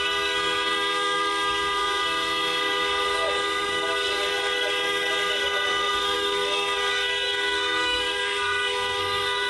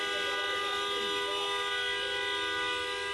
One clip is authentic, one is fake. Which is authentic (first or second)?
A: second